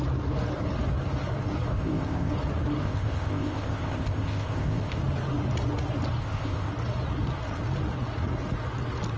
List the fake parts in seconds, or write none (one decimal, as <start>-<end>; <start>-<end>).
1.7-2.3; 2.8-5.0; 6.2-6.7